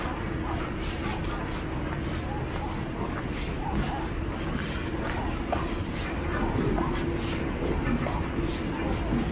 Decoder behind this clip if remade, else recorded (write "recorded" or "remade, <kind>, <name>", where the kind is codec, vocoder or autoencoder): recorded